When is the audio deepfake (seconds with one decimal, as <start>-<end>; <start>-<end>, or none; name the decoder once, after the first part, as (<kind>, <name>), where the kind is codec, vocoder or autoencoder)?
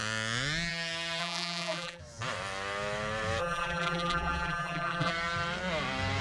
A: 1.2-2.0 (vocoder, BigVGAN v2); 3.4-5.1